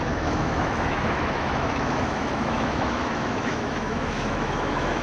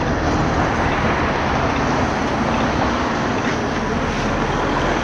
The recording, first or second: second